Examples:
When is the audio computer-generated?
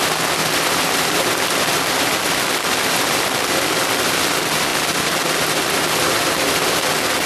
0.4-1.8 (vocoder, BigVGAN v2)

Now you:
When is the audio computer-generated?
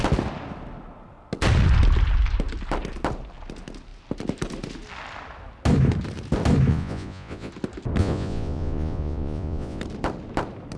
6.7-7.5 (vocoder, Vocos); 8.0-9.8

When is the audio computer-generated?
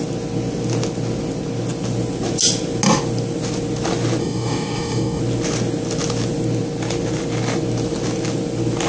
4.2-5.2 (codec, DAC)